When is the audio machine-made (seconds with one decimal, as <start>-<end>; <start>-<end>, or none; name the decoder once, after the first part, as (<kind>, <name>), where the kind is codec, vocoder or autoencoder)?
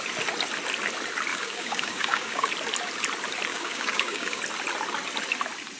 1.3-2.5 (codec, DAC); 3.5-4.4